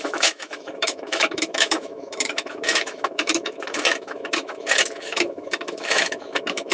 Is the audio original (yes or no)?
no